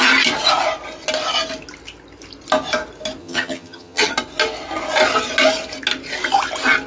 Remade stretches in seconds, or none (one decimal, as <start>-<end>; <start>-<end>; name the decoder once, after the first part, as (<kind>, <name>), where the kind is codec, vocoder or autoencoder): 3.2-4.1 (vocoder, HiFi-GAN)